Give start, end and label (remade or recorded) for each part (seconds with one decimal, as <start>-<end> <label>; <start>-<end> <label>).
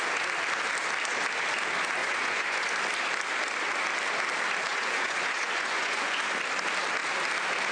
0.0-2.0 recorded; 2.0-2.7 remade; 2.7-4.7 recorded; 4.7-6.2 remade; 6.2-7.7 recorded